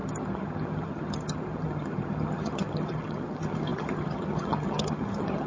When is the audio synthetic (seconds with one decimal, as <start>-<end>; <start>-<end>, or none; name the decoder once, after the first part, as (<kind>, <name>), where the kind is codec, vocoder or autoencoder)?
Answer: 0.0-5.5 (vocoder, HiFi-GAN)